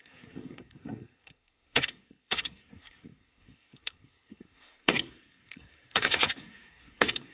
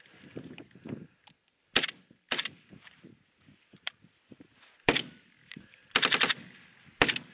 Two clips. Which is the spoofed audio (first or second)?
first